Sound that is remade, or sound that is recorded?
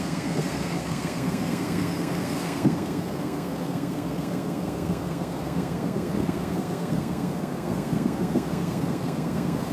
remade